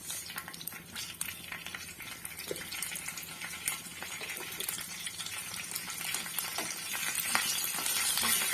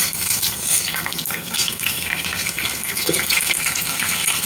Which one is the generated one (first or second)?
second